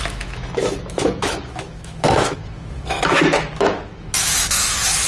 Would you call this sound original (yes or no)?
no